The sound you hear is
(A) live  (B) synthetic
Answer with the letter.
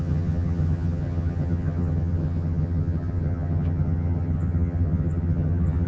B